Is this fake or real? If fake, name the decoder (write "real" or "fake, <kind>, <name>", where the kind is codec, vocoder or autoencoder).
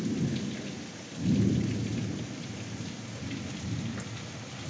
real